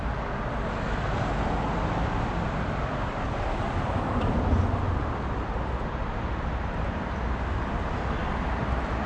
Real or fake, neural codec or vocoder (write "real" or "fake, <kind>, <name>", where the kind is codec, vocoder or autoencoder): real